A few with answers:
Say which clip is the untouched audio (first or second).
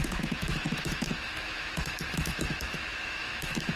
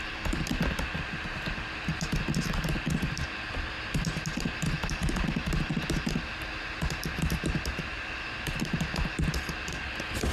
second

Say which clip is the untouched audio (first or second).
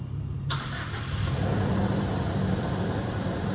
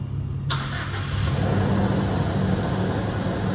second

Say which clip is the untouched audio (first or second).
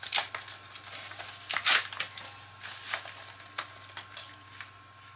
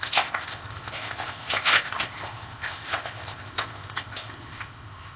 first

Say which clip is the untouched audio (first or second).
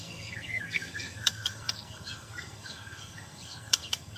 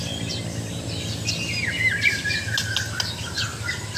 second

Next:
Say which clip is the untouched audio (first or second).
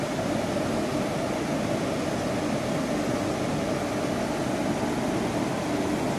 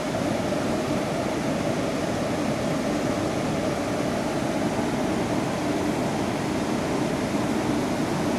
first